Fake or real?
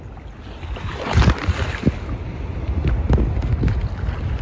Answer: real